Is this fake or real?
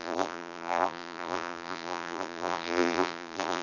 fake